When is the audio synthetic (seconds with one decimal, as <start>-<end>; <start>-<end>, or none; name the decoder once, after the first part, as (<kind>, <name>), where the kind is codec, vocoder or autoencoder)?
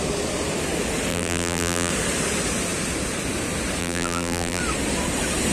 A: 1.1-1.9 (vocoder, BigVGAN v2); 3.8-4.6